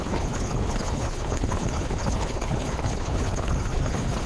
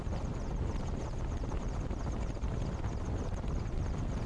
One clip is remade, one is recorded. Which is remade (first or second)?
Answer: first